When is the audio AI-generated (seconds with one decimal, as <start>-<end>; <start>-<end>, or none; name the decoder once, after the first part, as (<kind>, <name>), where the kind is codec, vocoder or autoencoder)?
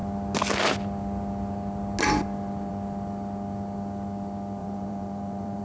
4.6-5.6 (vocoder, BigVGAN v2)